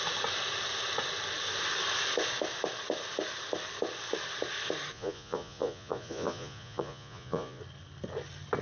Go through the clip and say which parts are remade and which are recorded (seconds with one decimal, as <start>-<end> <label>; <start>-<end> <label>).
0.0-4.9 recorded; 4.9-7.6 remade; 7.6-8.6 recorded

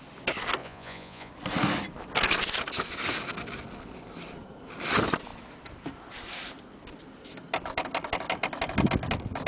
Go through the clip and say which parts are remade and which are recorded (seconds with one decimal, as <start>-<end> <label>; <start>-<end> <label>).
0.0-0.6 recorded; 0.6-1.3 remade; 1.3-9.5 recorded

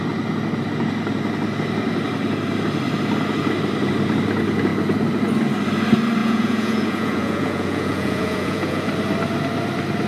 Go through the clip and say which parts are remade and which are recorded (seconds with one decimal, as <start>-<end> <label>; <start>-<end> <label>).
0.0-6.2 recorded; 6.2-8.9 remade; 8.9-10.1 recorded

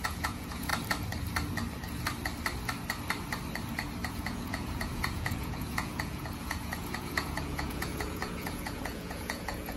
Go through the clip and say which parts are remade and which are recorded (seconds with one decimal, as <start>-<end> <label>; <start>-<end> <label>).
0.0-0.7 remade; 0.7-4.1 recorded; 4.1-9.8 remade

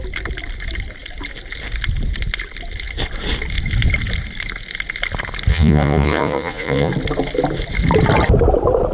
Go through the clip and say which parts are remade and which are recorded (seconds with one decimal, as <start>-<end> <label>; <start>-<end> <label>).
0.0-5.5 recorded; 5.5-6.9 remade; 6.9-8.9 recorded

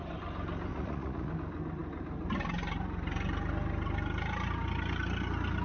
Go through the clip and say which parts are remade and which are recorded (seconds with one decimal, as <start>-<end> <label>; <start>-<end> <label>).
0.0-0.7 recorded; 0.7-1.3 remade; 1.3-5.6 recorded

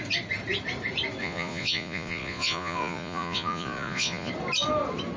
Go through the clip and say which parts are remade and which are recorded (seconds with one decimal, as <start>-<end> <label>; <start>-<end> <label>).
0.0-1.2 recorded; 1.2-4.3 remade; 4.3-5.2 recorded

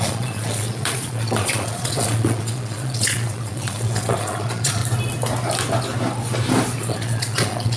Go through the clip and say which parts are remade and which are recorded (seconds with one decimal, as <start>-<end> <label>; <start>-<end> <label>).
0.0-4.8 remade; 4.8-6.8 recorded; 6.8-7.8 remade